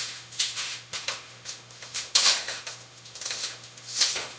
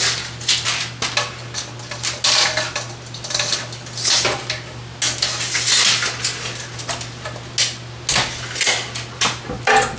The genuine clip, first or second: second